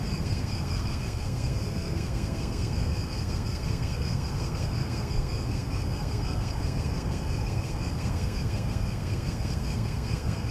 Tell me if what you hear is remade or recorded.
remade